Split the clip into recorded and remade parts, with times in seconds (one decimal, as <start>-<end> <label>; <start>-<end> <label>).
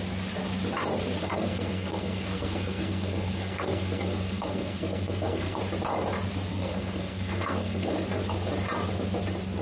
0.0-1.2 recorded; 1.2-5.6 remade; 5.6-6.5 recorded; 6.5-7.9 remade; 7.9-9.6 recorded